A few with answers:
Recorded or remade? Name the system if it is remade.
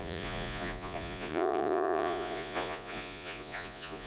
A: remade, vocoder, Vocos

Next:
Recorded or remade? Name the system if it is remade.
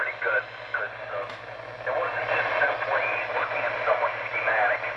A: recorded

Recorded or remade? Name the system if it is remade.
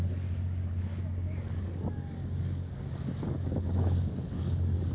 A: remade, codec, DAC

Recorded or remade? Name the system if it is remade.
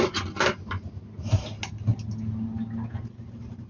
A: recorded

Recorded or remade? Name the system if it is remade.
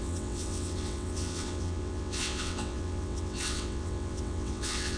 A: remade, vocoder, WaveNeXt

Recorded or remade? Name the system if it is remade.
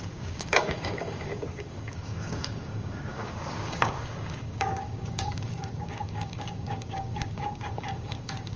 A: remade, codec, DAC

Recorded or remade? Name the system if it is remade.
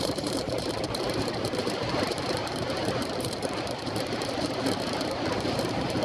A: remade, vocoder, BigVGAN v2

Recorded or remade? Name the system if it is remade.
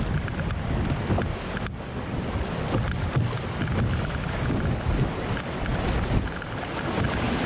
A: recorded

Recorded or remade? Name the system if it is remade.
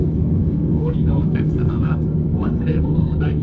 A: remade, codec, SNAC